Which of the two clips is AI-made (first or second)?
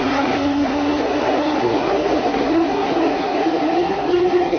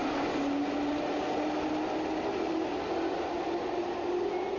first